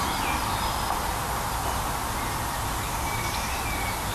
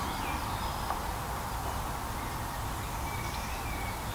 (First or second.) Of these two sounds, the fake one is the second